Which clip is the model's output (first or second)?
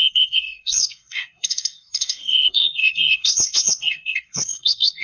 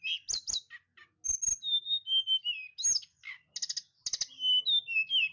first